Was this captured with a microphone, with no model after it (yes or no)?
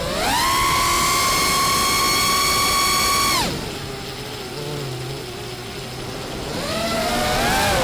yes